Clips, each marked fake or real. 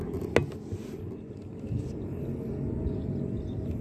real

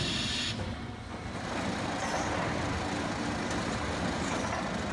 real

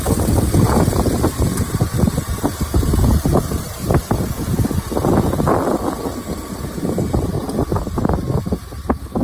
real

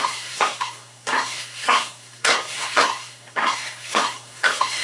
fake